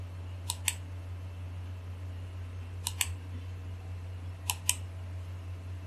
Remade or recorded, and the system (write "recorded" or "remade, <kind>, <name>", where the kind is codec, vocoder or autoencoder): recorded